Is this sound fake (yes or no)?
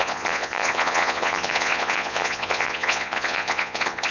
yes